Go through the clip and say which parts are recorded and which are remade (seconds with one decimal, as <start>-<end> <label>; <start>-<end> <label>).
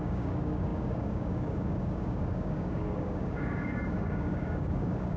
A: 0.0-5.2 remade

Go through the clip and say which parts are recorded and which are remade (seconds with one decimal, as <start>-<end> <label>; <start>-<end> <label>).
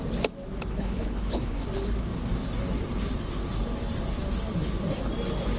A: 0.0-0.7 recorded; 0.7-1.6 remade; 1.6-5.6 recorded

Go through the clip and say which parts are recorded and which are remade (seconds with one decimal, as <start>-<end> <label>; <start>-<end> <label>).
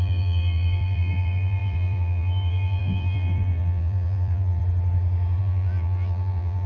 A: 0.0-4.6 remade; 4.6-5.4 recorded; 5.4-6.7 remade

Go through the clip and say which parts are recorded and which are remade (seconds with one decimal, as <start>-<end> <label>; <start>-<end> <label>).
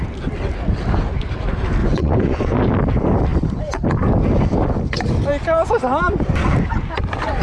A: 0.0-1.8 recorded; 1.8-2.6 remade; 2.6-7.4 recorded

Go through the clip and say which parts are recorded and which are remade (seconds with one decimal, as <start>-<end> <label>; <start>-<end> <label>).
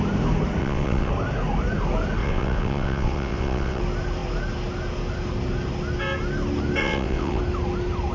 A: 0.0-0.6 recorded; 0.6-1.1 remade; 1.1-2.2 recorded; 2.2-3.8 remade; 3.8-6.8 recorded; 6.8-7.4 remade; 7.4-8.1 recorded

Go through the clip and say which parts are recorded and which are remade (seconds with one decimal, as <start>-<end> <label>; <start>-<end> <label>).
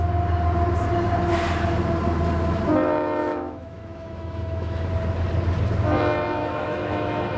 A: 0.0-3.2 recorded; 3.2-4.9 remade; 4.9-6.4 recorded; 6.4-7.4 remade